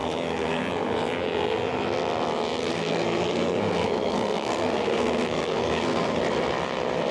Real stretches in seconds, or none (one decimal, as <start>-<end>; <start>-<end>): 0.6-2.6; 6.2-7.1